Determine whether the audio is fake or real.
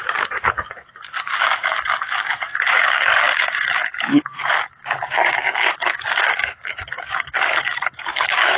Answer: fake